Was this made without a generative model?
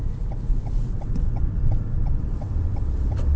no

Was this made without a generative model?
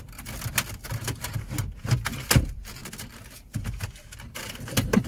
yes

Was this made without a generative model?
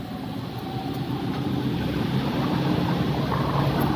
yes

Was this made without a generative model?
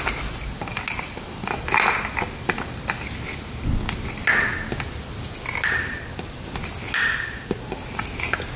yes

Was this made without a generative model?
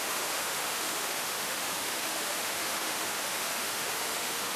no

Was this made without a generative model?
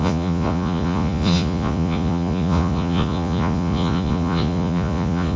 no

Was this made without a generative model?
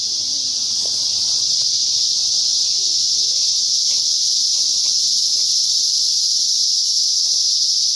yes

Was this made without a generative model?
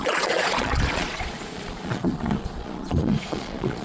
no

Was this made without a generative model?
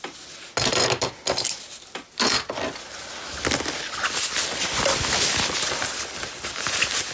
yes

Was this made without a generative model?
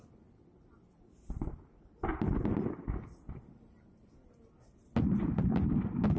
yes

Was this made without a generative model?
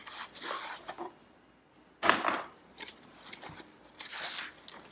yes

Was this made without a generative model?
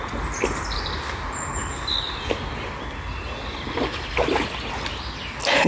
yes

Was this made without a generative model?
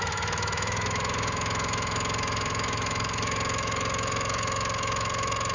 no